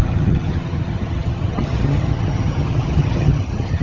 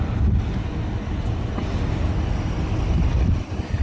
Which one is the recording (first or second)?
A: second